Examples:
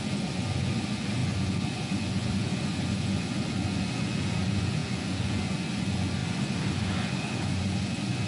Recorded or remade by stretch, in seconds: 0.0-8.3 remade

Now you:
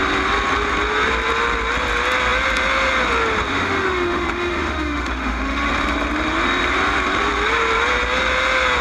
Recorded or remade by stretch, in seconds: 0.0-3.5 recorded; 3.5-5.7 remade; 5.7-8.8 recorded

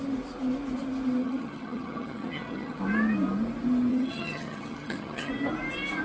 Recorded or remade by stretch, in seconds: 0.0-1.2 recorded; 1.2-2.8 remade; 2.8-3.9 recorded; 3.9-5.3 remade; 5.3-6.0 recorded

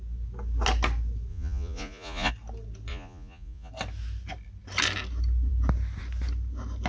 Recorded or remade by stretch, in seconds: 0.0-1.3 recorded; 1.3-2.3 remade; 2.3-2.9 recorded; 2.9-3.7 remade; 3.7-6.9 recorded